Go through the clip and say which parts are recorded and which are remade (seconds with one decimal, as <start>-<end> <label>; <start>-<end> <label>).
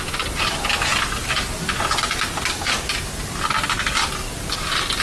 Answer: 0.0-5.0 recorded